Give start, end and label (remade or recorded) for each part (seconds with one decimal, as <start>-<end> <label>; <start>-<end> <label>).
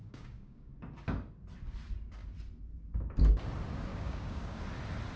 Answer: 0.0-0.7 remade; 0.7-3.9 recorded; 3.9-4.6 remade; 4.6-5.2 recorded